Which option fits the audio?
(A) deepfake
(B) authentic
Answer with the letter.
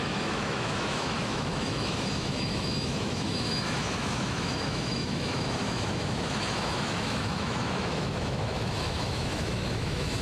A